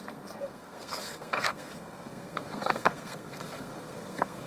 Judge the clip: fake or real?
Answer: fake